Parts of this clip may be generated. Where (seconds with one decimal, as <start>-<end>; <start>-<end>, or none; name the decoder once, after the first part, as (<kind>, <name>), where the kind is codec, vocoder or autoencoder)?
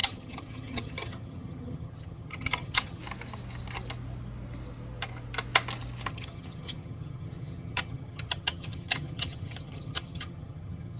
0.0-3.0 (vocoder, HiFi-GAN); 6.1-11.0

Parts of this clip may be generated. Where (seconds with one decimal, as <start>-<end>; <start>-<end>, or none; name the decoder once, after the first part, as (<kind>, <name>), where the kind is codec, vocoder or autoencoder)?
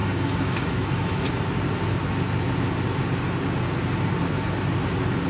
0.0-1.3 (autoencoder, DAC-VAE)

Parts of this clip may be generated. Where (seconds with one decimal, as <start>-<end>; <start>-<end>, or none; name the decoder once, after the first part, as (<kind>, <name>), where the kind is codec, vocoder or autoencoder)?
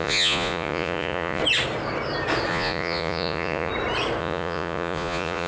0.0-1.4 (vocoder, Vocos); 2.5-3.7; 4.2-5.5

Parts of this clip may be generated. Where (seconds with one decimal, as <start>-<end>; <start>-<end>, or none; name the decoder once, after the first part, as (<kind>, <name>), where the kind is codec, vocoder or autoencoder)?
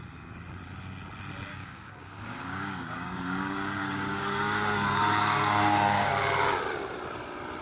1.5-6.1 (codec, DAC)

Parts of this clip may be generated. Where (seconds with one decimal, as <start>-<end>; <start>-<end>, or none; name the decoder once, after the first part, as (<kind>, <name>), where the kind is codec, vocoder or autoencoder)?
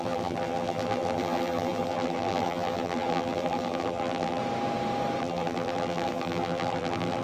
0.0-4.4 (vocoder, BigVGAN v2); 5.2-7.2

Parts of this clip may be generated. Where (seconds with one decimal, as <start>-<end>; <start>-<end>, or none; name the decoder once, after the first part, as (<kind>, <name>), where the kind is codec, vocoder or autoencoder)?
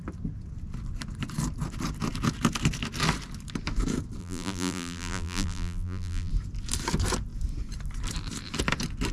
4.2-6.3 (vocoder, BigVGAN v2)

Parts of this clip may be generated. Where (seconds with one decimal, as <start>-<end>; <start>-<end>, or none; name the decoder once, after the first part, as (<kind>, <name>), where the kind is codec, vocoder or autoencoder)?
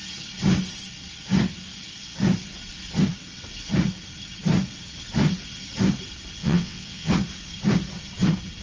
6.4-7.1 (vocoder, WaveNeXt)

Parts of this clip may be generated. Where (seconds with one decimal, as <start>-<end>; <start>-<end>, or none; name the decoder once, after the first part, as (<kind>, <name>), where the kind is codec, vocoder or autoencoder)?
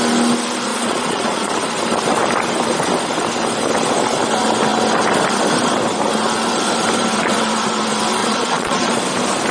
0.7-1.5 (vocoder, Vocos); 8.2-9.0